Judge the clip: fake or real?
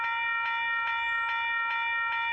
real